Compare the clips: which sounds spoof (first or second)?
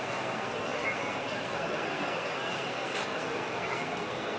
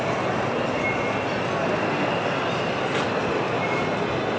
first